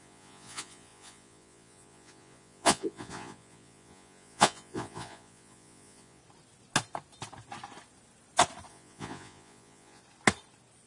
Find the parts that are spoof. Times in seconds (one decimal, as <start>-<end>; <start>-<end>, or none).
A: 0.0-6.2; 8.7-10.0